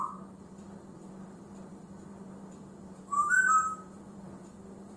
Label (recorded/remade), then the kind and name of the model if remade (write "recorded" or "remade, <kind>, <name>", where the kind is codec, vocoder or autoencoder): remade, vocoder, BigVGAN v2